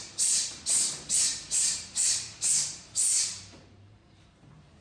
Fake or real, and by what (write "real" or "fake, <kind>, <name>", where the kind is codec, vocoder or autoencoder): fake, vocoder, BigVGAN v2